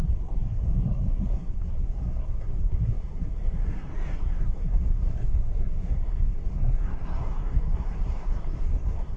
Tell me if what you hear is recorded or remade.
remade